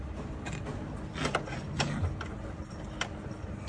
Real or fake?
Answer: real